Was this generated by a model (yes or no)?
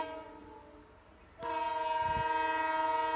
no